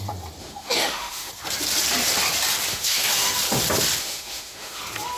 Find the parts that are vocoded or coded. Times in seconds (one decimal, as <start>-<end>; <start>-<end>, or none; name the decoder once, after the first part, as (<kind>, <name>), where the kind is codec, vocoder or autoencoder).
0.4-1.3 (autoencoder, DAC-VAE); 2.7-3.3; 4.0-4.8